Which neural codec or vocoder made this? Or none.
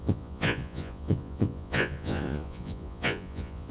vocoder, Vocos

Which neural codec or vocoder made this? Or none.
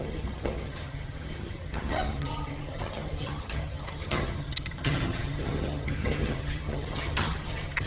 vocoder, HiFi-GAN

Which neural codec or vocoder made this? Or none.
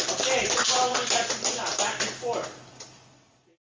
none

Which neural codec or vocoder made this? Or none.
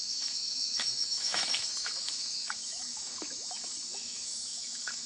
autoencoder, DAC-VAE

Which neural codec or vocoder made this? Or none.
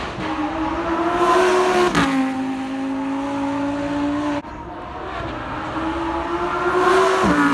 none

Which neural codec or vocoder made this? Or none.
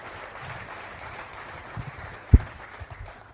vocoder, BigVGAN v2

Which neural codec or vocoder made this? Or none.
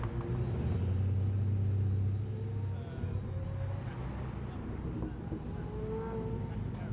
none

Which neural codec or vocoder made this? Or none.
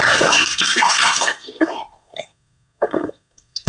codec, SNAC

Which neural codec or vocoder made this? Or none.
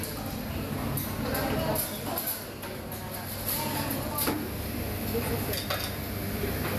none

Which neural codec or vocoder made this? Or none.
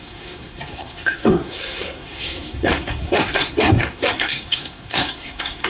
codec, SNAC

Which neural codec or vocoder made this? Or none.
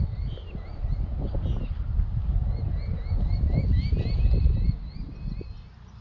none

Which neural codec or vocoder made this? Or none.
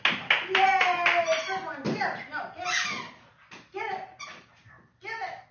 none